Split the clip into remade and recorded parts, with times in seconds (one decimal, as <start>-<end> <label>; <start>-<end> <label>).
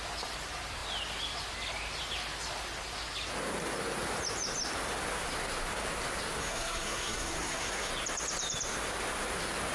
0.0-6.4 recorded; 6.4-7.9 remade; 7.9-9.7 recorded